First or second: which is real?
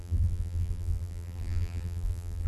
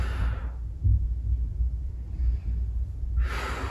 second